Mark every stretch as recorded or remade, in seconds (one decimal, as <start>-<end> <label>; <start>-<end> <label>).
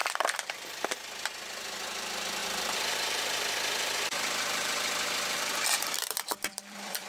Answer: 0.0-0.9 remade; 0.9-2.4 recorded; 2.4-7.1 remade